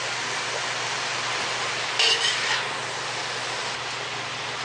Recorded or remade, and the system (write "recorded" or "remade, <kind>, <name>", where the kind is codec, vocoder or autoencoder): recorded